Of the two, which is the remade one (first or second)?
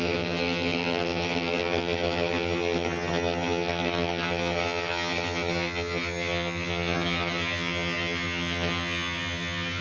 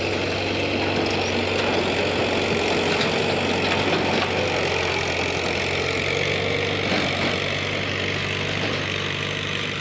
first